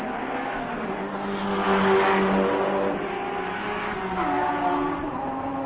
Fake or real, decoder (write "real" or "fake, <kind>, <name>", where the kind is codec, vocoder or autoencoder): real